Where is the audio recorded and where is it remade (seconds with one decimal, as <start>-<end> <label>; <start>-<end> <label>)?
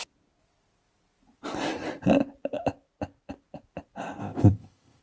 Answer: 0.0-4.2 recorded; 4.2-5.0 remade